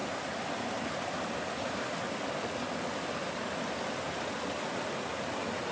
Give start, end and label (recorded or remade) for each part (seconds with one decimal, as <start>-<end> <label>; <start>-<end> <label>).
0.0-5.7 recorded